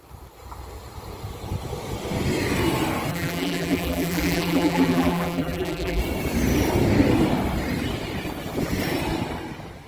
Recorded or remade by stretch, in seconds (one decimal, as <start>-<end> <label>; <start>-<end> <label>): 0.0-3.1 recorded; 3.1-6.0 remade; 6.0-9.9 recorded